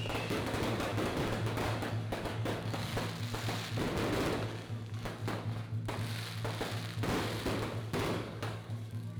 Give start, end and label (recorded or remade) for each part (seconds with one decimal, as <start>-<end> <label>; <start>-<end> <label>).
0.0-2.9 remade; 2.9-4.3 recorded; 4.3-5.2 remade; 5.2-7.8 recorded; 7.8-9.2 remade

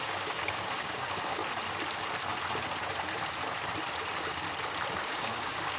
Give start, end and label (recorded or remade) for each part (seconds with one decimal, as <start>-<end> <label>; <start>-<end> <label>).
0.0-1.4 remade; 1.4-4.9 recorded; 4.9-5.8 remade

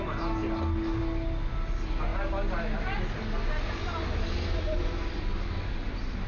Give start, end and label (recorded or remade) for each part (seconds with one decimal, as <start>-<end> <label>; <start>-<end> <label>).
0.0-6.3 recorded

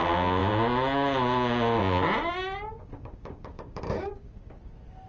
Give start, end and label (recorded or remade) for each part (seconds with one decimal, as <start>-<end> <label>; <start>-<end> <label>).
0.0-2.8 recorded; 2.8-4.6 remade; 4.6-5.1 recorded

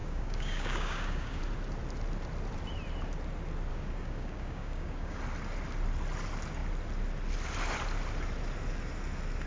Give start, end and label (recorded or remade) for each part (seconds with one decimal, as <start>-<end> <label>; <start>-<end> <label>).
0.0-1.4 remade; 1.4-3.7 recorded; 3.7-5.2 remade; 5.2-9.5 recorded